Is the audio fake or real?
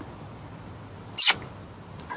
real